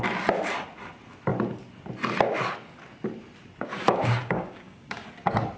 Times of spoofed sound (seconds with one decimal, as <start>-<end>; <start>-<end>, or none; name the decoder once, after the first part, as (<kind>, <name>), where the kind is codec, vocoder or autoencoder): 3.7-5.1 (codec, DAC)

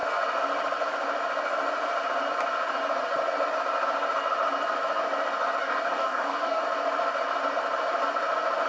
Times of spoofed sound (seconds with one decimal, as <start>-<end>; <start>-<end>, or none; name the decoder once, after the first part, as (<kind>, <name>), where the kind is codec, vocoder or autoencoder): 5.6-6.6 (codec, DAC)

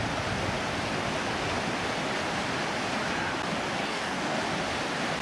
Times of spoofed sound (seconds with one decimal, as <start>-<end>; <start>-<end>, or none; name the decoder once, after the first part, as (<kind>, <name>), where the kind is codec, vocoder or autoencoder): 3.8-4.4 (codec, DAC)

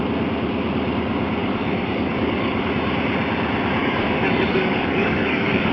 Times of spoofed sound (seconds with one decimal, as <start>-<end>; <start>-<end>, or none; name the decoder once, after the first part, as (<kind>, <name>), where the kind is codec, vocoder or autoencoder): 1.4-2.7 (codec, DAC); 3.8-5.7